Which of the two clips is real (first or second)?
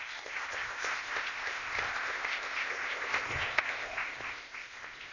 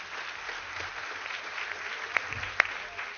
second